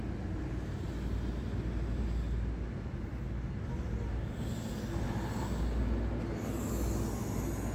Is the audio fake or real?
real